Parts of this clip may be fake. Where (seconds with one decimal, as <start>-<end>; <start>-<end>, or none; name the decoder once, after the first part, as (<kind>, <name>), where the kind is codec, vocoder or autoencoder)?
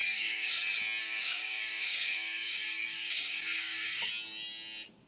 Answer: 0.0-0.5 (codec, DAC); 1.0-4.1